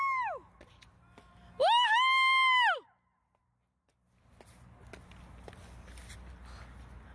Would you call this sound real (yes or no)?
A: yes